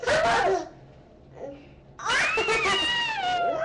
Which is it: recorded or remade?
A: recorded